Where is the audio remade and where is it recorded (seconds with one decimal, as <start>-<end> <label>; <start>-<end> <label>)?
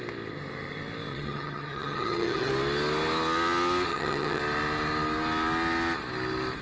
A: 0.0-1.1 recorded; 1.1-2.5 remade; 2.5-3.9 recorded; 3.9-4.4 remade; 4.4-6.6 recorded